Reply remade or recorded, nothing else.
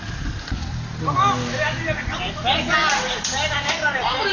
recorded